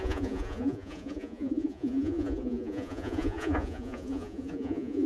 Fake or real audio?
fake